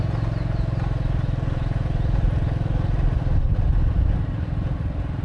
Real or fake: real